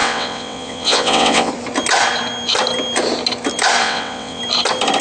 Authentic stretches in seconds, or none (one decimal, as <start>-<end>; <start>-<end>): 1.5-3.8; 4.4-5.0